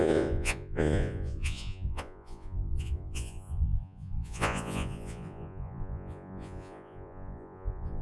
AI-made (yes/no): yes